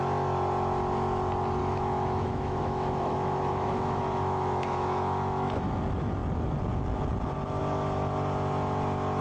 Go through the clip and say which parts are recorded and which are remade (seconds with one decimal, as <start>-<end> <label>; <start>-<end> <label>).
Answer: 0.0-1.6 recorded; 1.6-5.7 remade; 5.7-9.2 recorded